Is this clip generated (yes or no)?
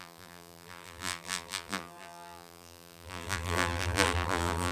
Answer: yes